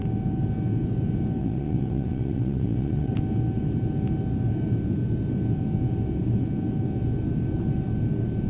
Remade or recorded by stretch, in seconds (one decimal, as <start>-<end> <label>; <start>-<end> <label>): 0.0-1.4 recorded; 1.4-3.1 remade; 3.1-8.5 recorded

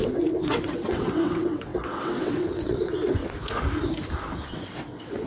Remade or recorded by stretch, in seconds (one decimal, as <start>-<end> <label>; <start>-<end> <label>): 0.0-3.2 remade; 3.2-4.5 recorded; 4.5-5.3 remade

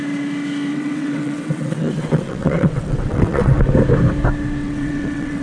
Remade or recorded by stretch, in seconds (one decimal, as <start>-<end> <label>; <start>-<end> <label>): 0.0-0.7 recorded; 0.7-3.6 remade; 3.6-4.6 recorded; 4.6-5.4 remade

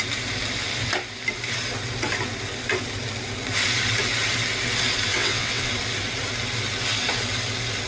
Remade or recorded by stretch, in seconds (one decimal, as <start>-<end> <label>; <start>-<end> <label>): 0.0-5.1 recorded; 5.1-5.7 remade; 5.7-7.9 recorded

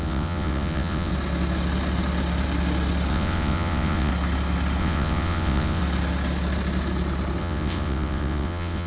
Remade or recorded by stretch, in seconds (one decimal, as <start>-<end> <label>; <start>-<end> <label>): 0.0-1.1 remade; 1.1-3.1 recorded; 3.1-4.1 remade; 4.1-4.8 recorded; 4.8-5.8 remade; 5.8-7.4 recorded; 7.4-8.9 remade

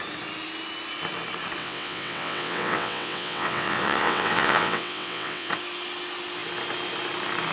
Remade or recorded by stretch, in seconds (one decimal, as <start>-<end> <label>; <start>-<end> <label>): 0.0-1.6 recorded; 1.6-5.5 remade; 5.5-7.5 recorded